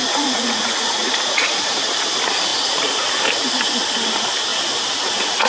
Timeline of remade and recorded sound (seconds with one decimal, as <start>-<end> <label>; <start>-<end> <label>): 0.0-1.8 remade; 1.8-5.5 recorded